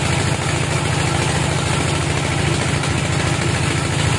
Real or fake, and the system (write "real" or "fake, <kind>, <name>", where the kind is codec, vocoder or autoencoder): real